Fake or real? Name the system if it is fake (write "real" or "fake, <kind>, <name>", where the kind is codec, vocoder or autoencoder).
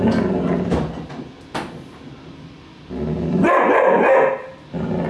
real